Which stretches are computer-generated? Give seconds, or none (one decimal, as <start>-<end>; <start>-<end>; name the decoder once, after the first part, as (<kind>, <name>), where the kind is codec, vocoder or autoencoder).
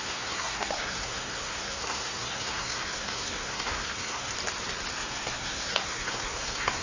0.0-4.3 (codec, SNAC); 4.9-6.8